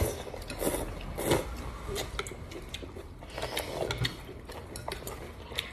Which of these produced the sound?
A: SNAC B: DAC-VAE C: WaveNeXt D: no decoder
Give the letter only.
D